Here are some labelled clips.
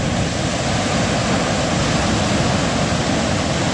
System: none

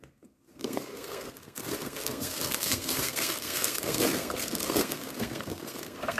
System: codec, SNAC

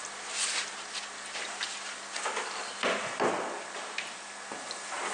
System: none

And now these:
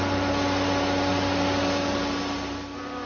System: none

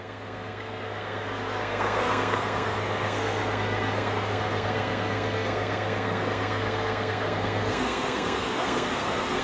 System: codec, SNAC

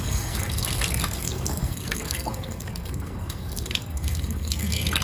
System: codec, SNAC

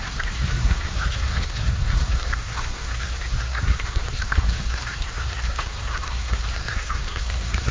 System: codec, SNAC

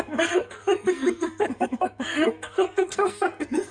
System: codec, SNAC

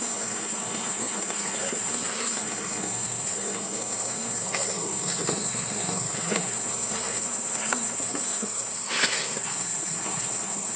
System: codec, SNAC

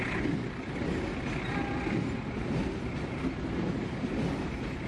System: none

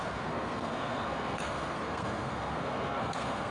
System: codec, SNAC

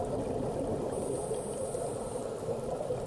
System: none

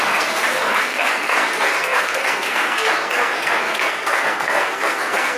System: codec, SNAC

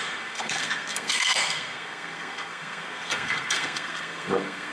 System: codec, SNAC